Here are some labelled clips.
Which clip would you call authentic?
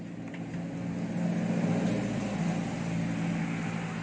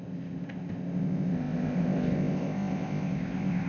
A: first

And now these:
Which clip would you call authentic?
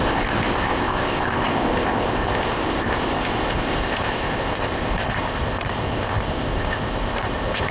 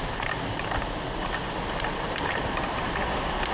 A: second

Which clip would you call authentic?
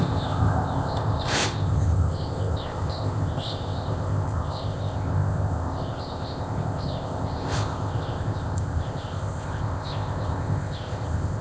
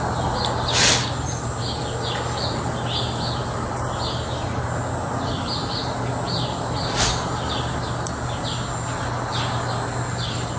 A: second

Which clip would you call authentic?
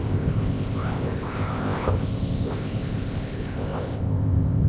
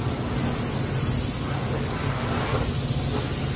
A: second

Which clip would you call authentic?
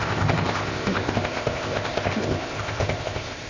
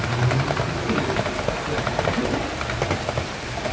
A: second